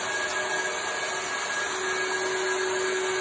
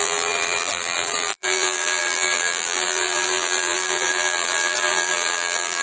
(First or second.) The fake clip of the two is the second